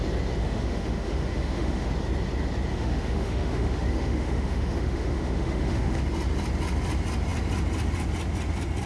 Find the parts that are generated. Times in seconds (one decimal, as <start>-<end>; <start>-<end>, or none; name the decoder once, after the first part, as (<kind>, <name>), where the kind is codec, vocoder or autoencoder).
0.4-1.9 (autoencoder, DAC-VAE); 2.7-6.0